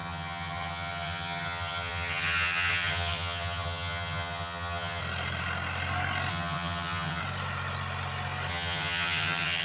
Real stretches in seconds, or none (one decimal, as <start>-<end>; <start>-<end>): 5.0-6.3; 7.2-8.5